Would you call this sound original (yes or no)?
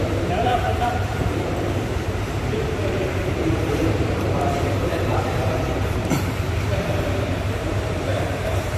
no